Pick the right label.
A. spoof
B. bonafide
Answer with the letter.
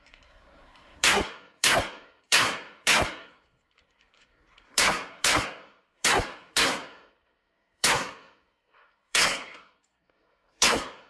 A